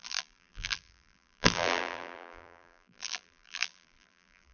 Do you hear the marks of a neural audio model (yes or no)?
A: yes